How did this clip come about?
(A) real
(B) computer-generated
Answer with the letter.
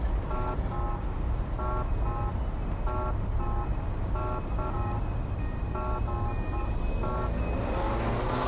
A